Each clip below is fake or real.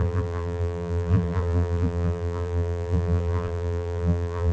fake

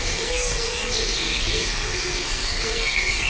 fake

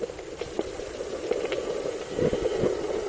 real